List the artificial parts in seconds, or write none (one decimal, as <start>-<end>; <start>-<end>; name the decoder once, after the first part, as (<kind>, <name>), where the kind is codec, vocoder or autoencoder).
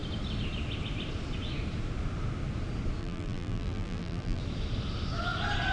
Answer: 3.0-4.4 (vocoder, BigVGAN v2)